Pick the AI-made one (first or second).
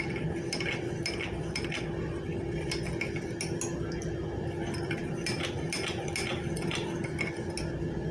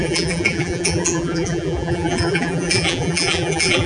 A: second